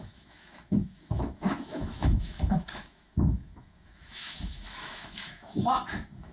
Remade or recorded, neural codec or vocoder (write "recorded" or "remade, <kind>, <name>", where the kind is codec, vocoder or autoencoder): remade, autoencoder, DAC-VAE